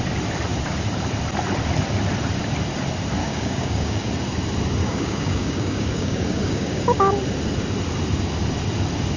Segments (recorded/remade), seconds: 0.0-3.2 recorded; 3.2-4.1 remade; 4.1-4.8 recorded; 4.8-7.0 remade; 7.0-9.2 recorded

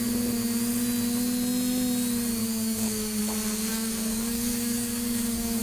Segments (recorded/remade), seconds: 0.0-2.4 recorded; 2.4-3.2 remade; 3.2-3.7 recorded; 3.7-5.6 remade

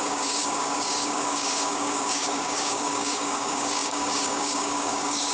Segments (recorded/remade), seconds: 0.0-5.3 remade

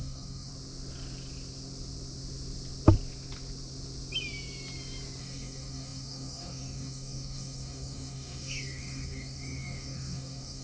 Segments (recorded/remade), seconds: 0.0-0.5 remade; 0.5-5.2 recorded; 5.2-10.6 remade

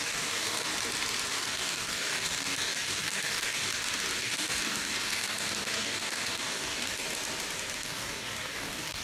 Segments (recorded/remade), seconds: 0.0-0.7 remade; 0.7-1.3 recorded; 1.3-3.7 remade; 3.7-4.2 recorded; 4.2-7.0 remade; 7.0-7.8 recorded; 7.8-9.0 remade

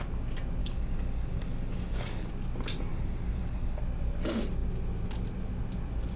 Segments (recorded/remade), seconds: 0.0-0.6 recorded; 0.6-2.3 remade; 2.3-2.9 recorded; 2.9-3.8 remade; 3.8-6.2 recorded

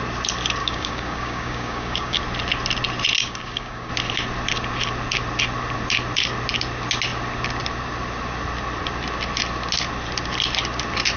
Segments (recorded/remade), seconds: 0.0-0.6 recorded; 0.6-2.2 remade; 2.2-3.2 recorded; 3.2-3.9 remade; 3.9-11.2 recorded